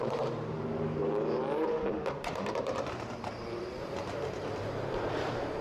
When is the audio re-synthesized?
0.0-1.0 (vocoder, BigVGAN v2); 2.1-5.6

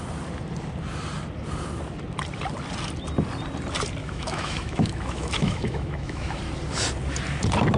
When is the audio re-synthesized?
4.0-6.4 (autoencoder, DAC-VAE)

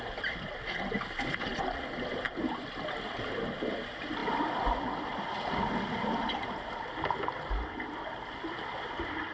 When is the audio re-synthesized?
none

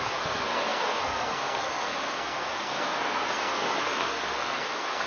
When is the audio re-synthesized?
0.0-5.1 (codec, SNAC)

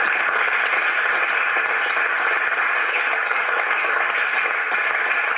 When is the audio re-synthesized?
2.8-4.0 (autoencoder, DAC-VAE)